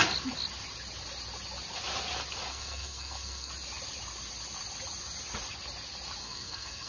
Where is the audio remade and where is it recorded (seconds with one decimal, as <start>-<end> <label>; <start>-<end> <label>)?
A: 0.0-2.5 recorded; 2.5-3.5 remade; 3.5-6.2 recorded; 6.2-6.9 remade

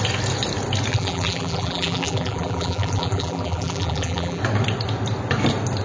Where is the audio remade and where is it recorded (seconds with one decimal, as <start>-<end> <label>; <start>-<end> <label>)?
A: 0.0-0.9 recorded; 0.9-4.4 remade; 4.4-5.8 recorded

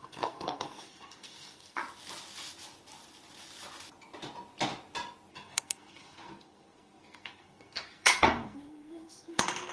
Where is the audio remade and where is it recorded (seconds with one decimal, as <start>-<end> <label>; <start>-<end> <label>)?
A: 0.0-1.8 remade; 1.8-5.3 recorded; 5.3-9.7 remade

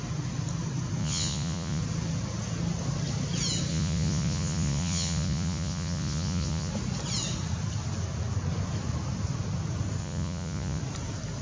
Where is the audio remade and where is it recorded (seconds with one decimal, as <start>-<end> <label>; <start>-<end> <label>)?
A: 0.0-1.0 recorded; 1.0-1.8 remade; 1.8-3.7 recorded; 3.7-6.7 remade; 6.7-10.0 recorded; 10.0-10.8 remade; 10.8-11.4 recorded

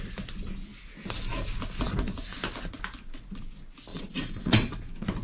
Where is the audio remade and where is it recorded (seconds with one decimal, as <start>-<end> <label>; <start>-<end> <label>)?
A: 0.0-3.9 recorded; 3.9-4.7 remade; 4.7-5.2 recorded

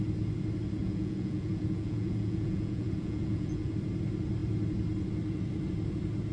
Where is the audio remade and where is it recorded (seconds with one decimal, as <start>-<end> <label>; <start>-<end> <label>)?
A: 0.0-0.8 recorded; 0.8-3.7 remade; 3.7-6.3 recorded

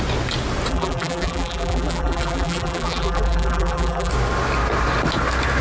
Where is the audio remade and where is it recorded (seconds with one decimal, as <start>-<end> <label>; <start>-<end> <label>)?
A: 0.0-0.7 recorded; 0.7-4.1 remade; 4.1-5.6 recorded